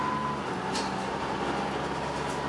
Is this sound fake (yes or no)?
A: no